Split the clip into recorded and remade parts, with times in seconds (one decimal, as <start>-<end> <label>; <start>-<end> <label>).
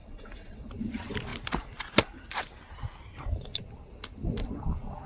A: 0.0-0.7 remade; 0.7-5.1 recorded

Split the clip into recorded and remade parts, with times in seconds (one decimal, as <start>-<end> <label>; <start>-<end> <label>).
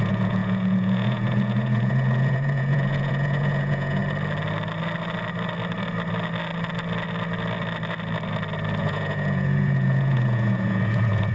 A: 0.0-4.0 remade; 4.0-8.8 recorded; 8.8-11.3 remade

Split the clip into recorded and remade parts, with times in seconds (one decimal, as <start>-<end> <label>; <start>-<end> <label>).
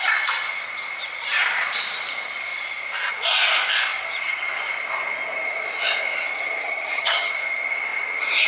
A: 0.0-6.6 recorded; 6.6-7.3 remade; 7.3-8.5 recorded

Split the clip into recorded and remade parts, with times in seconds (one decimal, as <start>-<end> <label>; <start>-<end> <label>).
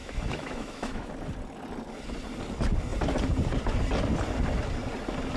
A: 0.0-1.1 remade; 1.1-5.4 recorded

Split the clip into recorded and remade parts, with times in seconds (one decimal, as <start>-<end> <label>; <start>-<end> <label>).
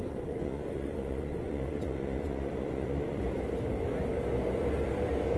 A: 0.0-3.2 remade; 3.2-5.4 recorded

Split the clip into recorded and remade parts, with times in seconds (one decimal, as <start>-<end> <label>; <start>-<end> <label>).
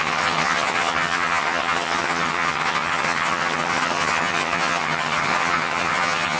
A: 0.0-6.4 remade